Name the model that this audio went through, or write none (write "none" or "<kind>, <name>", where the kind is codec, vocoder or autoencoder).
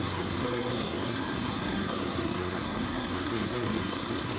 codec, SNAC